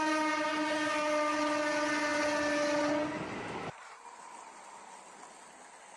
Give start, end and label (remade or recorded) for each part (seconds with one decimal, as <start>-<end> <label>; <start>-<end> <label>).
0.0-6.0 recorded